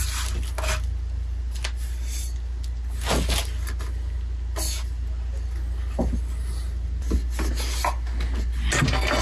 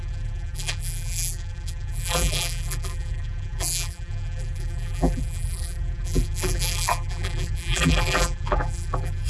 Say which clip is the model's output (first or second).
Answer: second